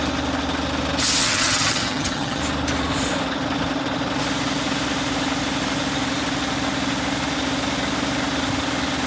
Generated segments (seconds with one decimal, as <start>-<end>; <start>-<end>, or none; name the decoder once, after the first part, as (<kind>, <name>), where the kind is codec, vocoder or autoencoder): 1.2-2.4 (vocoder, HiFi-GAN)

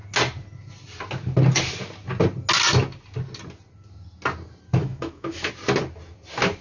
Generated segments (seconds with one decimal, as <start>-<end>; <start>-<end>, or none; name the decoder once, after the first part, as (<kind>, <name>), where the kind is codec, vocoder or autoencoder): 4.8-5.5 (autoencoder, DAC-VAE)